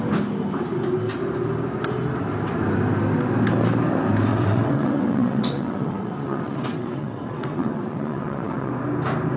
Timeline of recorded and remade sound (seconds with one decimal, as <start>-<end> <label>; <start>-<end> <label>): 0.0-4.3 recorded; 4.3-8.7 remade; 8.7-9.4 recorded